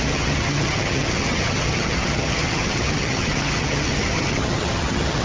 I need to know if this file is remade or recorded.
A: remade